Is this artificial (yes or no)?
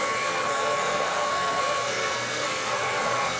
yes